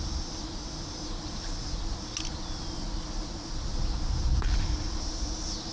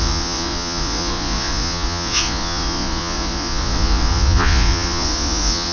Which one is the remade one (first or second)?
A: second